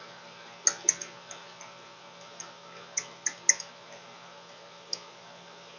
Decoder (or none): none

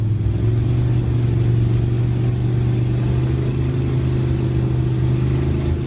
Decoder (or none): none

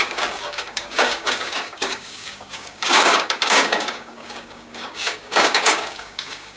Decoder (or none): codec, DAC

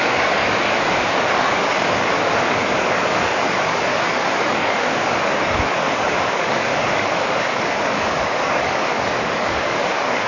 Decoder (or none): codec, DAC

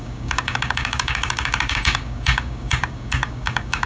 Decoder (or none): codec, DAC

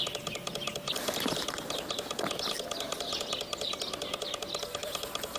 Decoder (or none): none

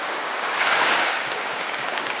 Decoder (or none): codec, DAC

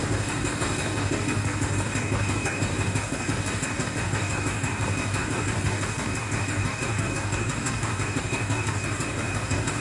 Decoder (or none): codec, DAC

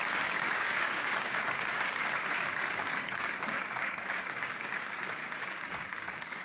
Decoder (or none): codec, DAC